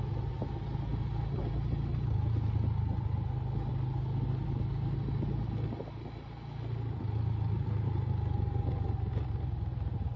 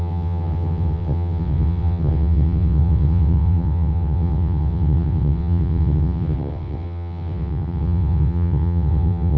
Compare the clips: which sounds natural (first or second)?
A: first